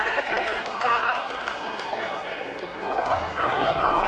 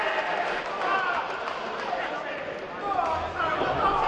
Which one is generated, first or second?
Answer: first